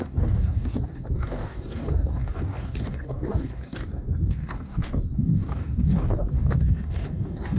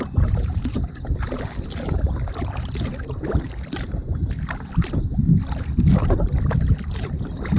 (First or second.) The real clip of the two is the second